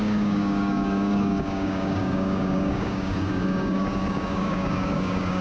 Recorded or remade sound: remade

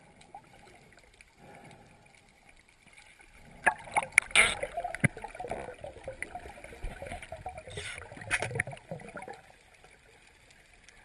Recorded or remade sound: recorded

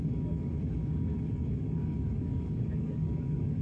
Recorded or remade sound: remade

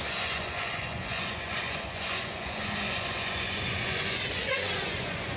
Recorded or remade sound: remade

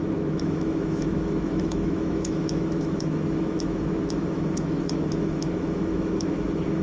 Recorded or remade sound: remade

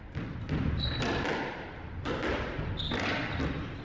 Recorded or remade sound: recorded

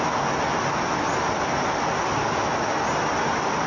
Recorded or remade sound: recorded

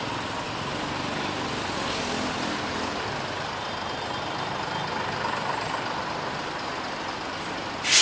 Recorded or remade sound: recorded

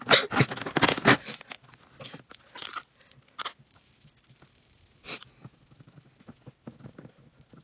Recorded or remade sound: recorded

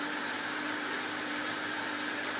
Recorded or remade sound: remade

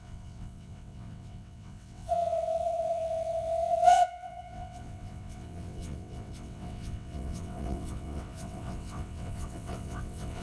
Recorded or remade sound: remade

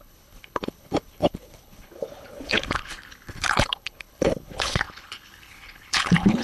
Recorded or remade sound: remade